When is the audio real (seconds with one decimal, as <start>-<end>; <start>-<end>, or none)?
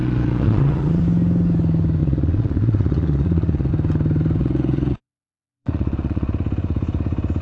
1.0-2.0; 3.7-4.4; 6.3-7.4